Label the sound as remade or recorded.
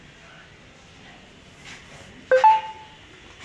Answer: recorded